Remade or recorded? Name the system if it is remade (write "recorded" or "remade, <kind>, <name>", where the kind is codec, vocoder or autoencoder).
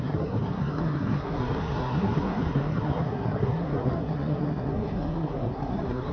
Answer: remade, codec, SNAC